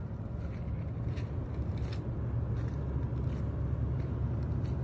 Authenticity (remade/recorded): recorded